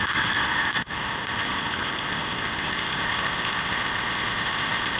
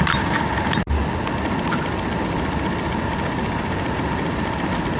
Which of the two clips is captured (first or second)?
second